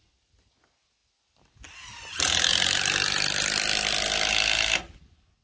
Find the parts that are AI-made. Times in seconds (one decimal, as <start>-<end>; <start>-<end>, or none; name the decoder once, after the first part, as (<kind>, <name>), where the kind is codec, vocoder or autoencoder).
none